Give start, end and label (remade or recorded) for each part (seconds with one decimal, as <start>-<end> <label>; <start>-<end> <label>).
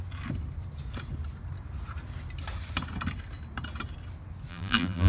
0.0-4.5 recorded; 4.5-5.1 remade